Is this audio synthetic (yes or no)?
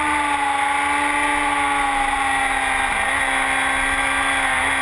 no